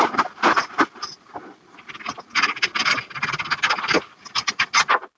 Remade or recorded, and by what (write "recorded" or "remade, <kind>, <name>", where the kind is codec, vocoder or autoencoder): recorded